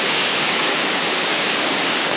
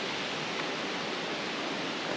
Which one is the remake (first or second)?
first